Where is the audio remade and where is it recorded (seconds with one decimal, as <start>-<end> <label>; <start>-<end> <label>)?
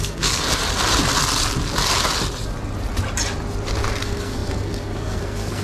0.0-0.6 remade; 0.6-4.0 recorded; 4.0-5.6 remade